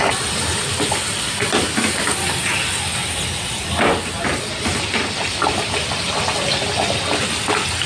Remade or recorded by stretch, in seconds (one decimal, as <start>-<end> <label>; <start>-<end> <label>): 0.0-3.0 recorded; 3.0-6.1 remade; 6.1-7.9 recorded